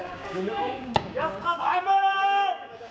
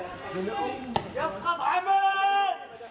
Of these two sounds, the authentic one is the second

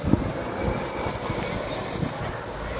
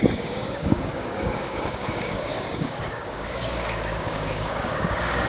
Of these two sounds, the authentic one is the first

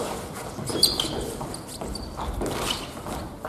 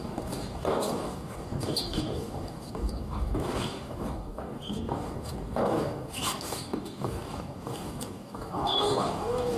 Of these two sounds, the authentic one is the first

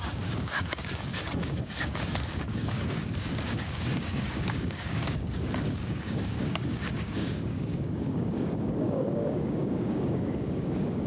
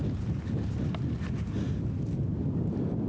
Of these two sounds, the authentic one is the second